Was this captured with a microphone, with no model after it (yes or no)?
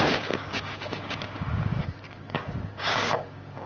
no